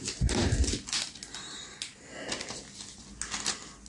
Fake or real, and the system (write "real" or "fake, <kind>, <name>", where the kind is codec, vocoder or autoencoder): real